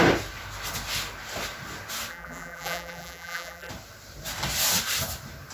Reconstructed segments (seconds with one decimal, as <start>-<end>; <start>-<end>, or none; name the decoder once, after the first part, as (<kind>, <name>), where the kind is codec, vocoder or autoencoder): 2.1-3.7 (vocoder, BigVGAN v2)